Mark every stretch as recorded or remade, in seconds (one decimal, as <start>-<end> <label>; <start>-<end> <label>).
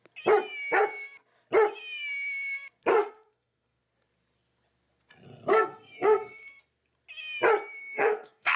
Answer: 0.0-2.9 recorded; 2.9-3.8 remade; 3.8-5.5 recorded; 5.5-6.6 remade; 6.6-7.8 recorded; 7.8-8.6 remade